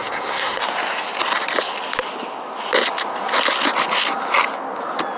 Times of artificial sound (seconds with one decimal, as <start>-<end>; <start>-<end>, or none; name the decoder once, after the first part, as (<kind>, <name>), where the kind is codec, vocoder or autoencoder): 0.0-0.6 (codec, SNAC)